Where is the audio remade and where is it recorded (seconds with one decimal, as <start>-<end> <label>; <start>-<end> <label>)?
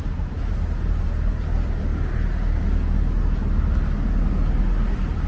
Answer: 0.0-5.3 recorded